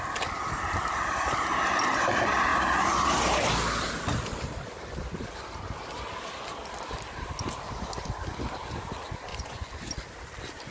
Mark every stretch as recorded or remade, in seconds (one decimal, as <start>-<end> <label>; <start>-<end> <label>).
0.0-9.3 recorded; 9.3-9.8 remade; 9.8-10.7 recorded